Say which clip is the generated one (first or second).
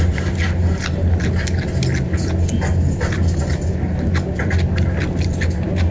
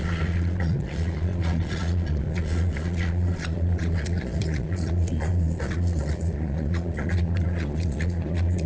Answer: second